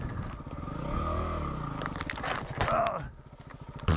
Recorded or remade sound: recorded